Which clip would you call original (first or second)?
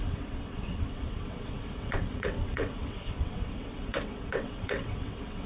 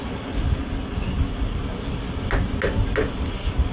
second